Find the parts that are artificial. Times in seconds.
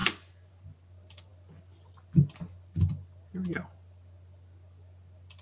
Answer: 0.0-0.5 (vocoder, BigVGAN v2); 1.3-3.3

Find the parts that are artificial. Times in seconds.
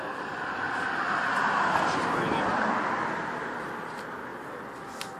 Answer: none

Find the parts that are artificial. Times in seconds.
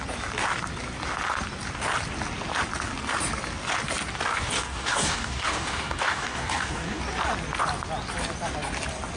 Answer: 4.3-7.0 (codec, DAC)